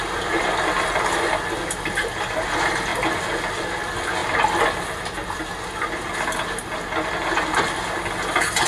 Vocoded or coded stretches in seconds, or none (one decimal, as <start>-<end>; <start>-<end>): 2.9-3.5